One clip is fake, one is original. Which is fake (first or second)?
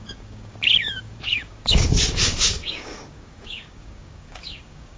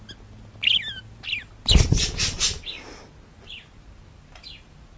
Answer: first